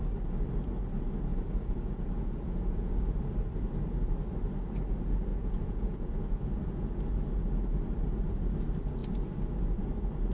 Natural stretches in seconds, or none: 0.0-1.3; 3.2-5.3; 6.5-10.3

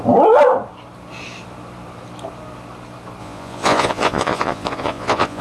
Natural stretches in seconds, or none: 0.0-3.2

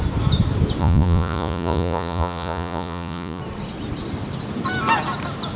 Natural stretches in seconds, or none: 0.0-0.8; 3.4-5.6